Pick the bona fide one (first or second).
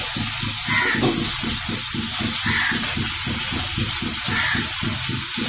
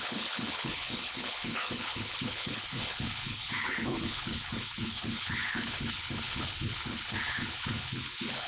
first